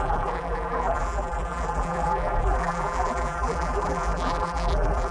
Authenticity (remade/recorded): remade